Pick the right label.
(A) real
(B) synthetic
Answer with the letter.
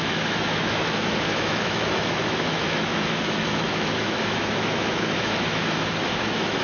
B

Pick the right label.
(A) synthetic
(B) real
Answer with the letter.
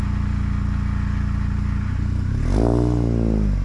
B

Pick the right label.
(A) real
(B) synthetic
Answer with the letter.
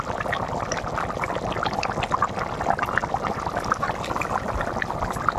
A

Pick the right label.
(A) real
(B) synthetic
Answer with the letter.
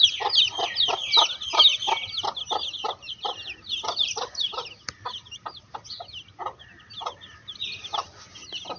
A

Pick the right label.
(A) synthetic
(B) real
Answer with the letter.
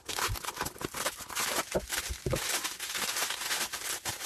B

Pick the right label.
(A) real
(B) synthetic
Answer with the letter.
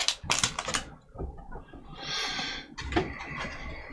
A